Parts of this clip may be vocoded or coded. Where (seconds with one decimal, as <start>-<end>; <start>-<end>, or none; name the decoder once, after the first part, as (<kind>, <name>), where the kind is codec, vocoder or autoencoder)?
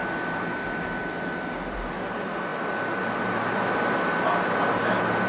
none